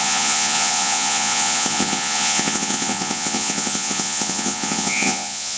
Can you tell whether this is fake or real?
fake